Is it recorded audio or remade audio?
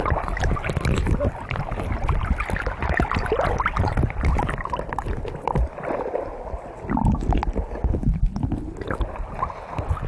recorded